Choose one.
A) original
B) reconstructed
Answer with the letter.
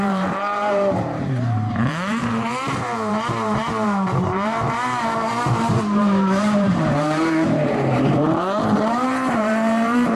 B